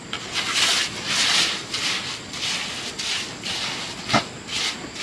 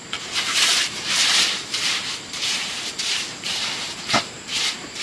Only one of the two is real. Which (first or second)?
first